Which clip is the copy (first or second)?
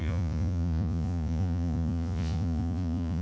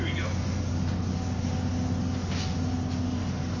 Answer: first